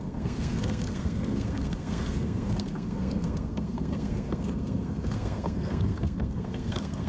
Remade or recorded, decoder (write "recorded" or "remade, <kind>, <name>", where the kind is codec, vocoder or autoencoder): remade, codec, SNAC